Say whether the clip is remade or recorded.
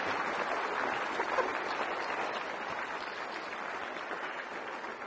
recorded